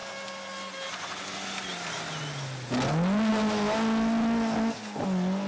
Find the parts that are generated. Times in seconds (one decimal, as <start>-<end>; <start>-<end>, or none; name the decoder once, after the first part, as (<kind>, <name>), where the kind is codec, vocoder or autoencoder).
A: none